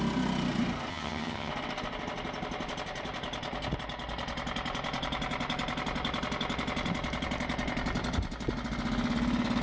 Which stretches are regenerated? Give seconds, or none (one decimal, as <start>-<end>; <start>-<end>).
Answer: 0.9-1.5